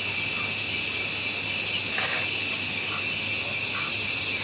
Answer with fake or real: real